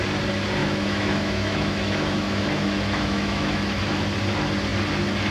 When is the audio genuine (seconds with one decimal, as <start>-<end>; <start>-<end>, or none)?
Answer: 0.0-0.6; 3.8-5.3